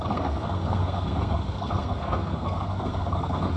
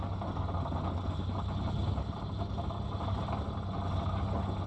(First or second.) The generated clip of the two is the first